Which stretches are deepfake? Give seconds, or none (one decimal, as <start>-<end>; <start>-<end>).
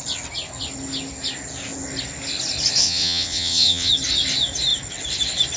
2.8-3.9